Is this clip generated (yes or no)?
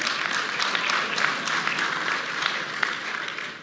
no